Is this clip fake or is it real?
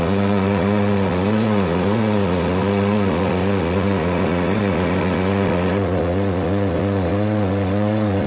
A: fake